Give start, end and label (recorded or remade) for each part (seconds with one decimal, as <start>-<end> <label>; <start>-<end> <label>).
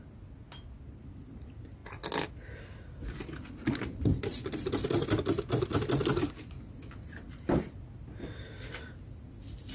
0.0-9.7 recorded